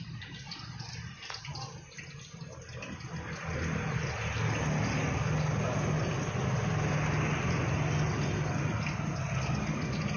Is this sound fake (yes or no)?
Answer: no